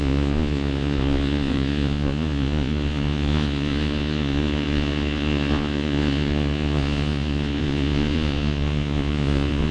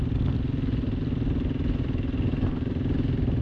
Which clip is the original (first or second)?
second